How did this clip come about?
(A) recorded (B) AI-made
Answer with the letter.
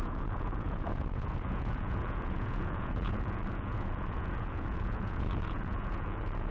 B